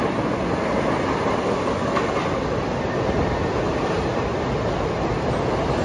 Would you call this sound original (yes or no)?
yes